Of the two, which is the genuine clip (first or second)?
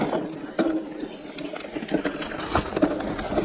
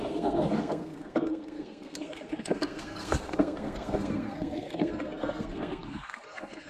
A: first